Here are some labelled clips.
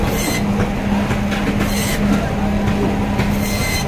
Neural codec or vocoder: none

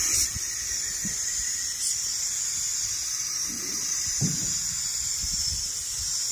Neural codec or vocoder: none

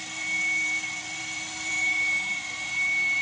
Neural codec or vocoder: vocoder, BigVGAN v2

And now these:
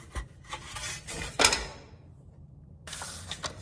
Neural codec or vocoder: vocoder, BigVGAN v2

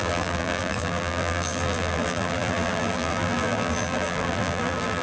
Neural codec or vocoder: vocoder, BigVGAN v2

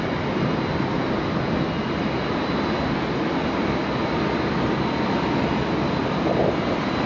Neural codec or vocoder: none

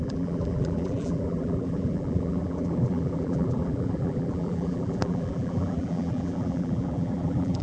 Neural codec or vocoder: vocoder, BigVGAN v2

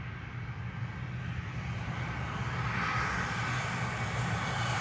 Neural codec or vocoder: none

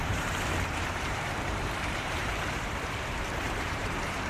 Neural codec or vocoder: vocoder, BigVGAN v2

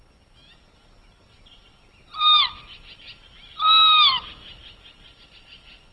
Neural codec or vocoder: none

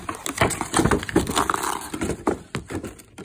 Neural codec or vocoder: none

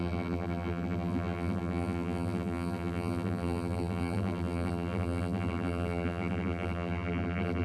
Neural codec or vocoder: vocoder, BigVGAN v2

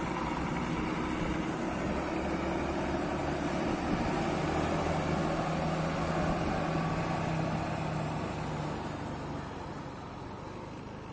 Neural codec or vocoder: none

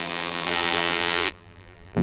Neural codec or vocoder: vocoder, BigVGAN v2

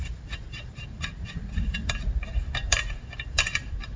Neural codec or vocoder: vocoder, BigVGAN v2